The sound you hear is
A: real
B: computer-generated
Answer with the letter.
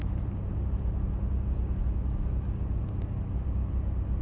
A